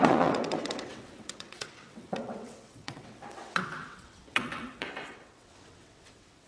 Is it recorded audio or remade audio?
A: remade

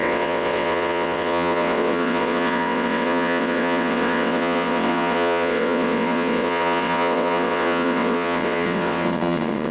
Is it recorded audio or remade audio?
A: remade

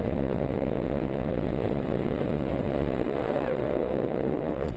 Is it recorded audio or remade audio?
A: remade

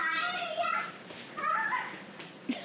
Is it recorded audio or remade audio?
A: recorded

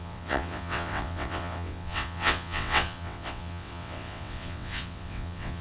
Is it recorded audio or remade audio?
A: remade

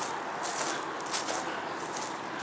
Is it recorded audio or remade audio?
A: recorded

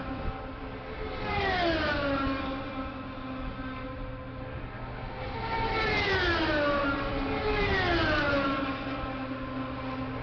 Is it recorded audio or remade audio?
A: recorded